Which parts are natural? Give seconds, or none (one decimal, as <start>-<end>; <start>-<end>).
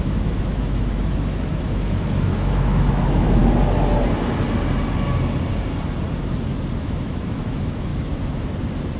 3.4-6.8; 7.9-9.0